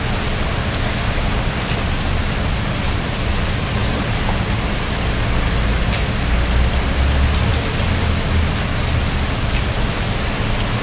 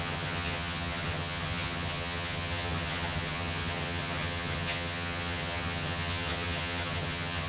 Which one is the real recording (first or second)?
first